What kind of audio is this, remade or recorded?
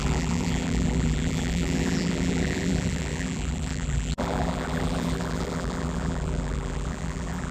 remade